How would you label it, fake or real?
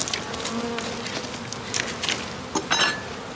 real